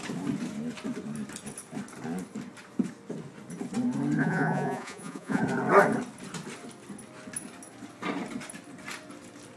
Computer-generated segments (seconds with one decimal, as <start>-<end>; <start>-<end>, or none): 4.2-5.4